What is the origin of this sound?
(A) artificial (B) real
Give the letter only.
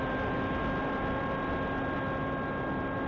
B